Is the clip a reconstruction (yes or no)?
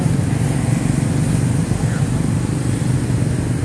no